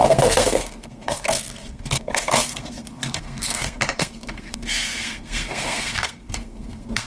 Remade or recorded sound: remade